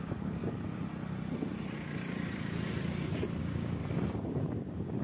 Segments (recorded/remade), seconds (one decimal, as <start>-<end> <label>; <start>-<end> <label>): 0.0-0.4 remade; 0.4-3.4 recorded; 3.4-3.8 remade; 3.8-4.5 recorded; 4.5-5.0 remade